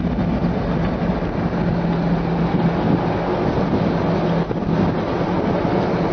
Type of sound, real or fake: real